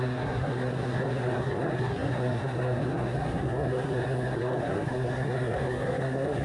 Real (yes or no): no